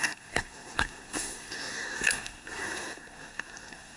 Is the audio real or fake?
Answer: fake